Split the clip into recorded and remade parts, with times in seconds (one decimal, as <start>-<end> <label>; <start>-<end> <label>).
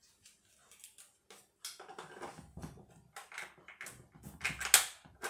0.0-5.3 recorded